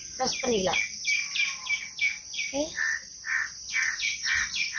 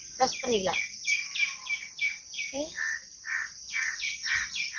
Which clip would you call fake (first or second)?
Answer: second